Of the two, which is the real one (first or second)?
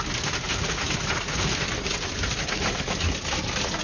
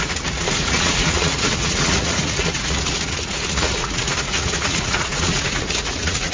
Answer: first